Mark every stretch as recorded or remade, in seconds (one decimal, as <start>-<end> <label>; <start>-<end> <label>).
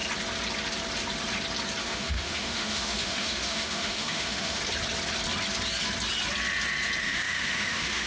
0.0-1.8 recorded; 1.8-4.6 remade; 4.6-7.0 recorded; 7.0-8.1 remade